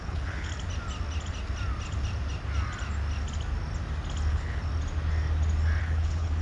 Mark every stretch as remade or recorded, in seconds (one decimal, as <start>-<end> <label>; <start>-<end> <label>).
0.0-0.5 remade; 0.5-4.3 recorded; 4.3-4.7 remade; 4.7-5.8 recorded; 5.8-6.4 remade